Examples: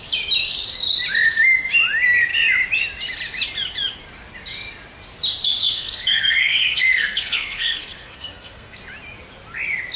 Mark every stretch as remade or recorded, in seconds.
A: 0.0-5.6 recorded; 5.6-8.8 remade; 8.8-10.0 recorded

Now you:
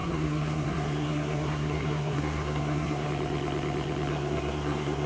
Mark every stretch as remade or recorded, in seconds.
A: 0.0-3.1 remade; 3.1-4.1 recorded; 4.1-5.1 remade

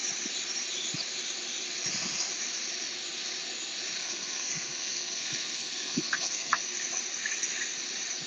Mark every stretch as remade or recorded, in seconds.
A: 0.0-4.0 recorded; 4.0-6.6 remade; 6.6-8.3 recorded

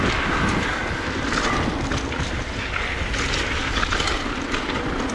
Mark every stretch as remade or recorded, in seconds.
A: 0.0-5.1 recorded

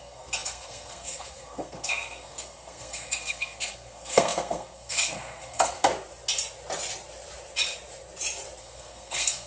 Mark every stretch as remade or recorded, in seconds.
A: 0.0-5.9 remade; 5.9-8.6 recorded; 8.6-9.5 remade

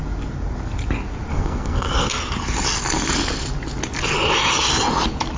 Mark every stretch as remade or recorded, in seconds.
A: 0.0-1.3 recorded; 1.3-2.1 remade; 2.1-5.4 recorded

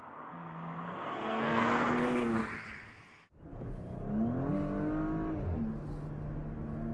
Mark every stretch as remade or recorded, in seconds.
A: 0.0-2.4 remade; 2.4-6.9 recorded